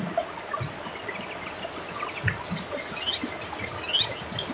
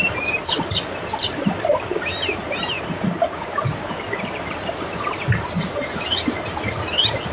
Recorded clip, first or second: first